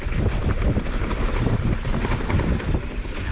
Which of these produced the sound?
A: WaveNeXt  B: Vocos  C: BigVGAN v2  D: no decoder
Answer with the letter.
C